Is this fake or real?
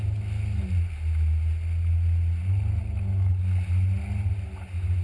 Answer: real